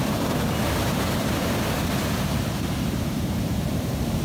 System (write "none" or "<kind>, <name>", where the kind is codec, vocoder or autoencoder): vocoder, BigVGAN v2